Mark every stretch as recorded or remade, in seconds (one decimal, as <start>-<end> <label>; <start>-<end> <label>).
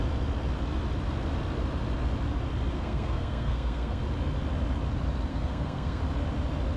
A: 0.0-2.7 recorded; 2.7-4.0 remade; 4.0-5.3 recorded; 5.3-6.0 remade; 6.0-6.8 recorded